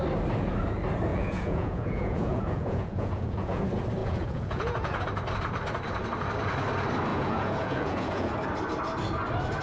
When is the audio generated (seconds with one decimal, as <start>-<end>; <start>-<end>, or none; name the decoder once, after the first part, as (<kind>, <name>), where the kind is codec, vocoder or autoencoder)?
1.1-3.6 (vocoder, Vocos); 4.0-5.0; 7.1-8.3